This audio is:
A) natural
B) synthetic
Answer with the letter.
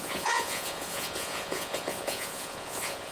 B